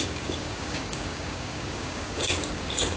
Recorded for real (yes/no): no